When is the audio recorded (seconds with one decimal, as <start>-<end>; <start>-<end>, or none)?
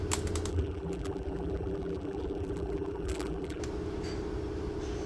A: 0.0-0.5; 3.6-5.1